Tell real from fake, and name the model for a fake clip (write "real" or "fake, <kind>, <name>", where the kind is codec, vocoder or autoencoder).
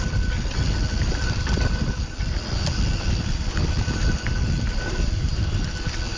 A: fake, vocoder, BigVGAN v2